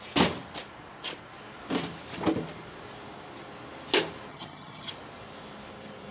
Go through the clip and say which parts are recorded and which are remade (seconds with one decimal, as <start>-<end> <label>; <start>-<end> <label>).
0.0-4.3 recorded; 4.3-4.9 remade; 4.9-6.1 recorded